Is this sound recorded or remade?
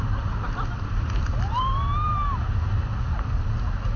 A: recorded